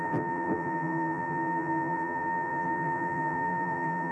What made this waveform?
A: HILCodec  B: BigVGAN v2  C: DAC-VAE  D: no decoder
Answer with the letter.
B